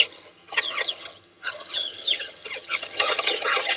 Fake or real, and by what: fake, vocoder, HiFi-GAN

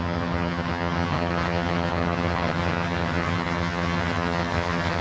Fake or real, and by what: fake, vocoder, HiFi-GAN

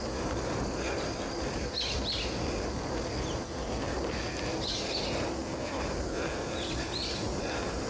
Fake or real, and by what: real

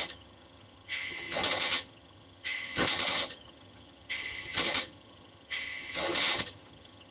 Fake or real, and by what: fake, vocoder, HiFi-GAN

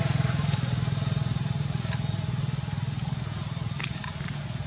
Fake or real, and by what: real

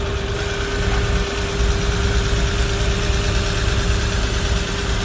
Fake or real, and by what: real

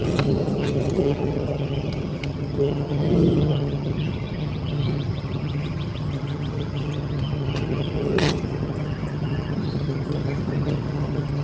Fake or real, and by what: fake, vocoder, HiFi-GAN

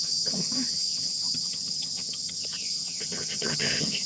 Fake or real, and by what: fake, vocoder, HiFi-GAN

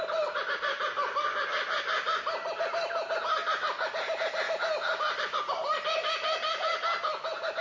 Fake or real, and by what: real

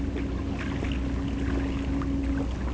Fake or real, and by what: real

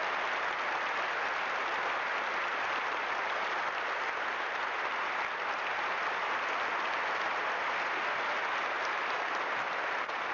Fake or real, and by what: real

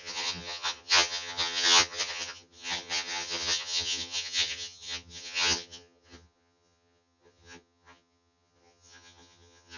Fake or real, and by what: fake, vocoder, HiFi-GAN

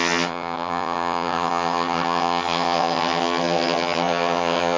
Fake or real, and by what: fake, vocoder, HiFi-GAN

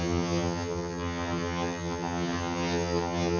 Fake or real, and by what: fake, vocoder, HiFi-GAN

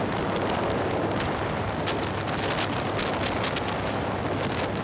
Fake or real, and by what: real